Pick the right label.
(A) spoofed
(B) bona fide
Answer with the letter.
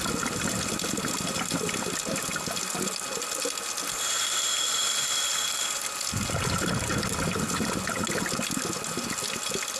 B